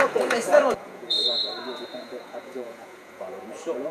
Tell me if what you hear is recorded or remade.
remade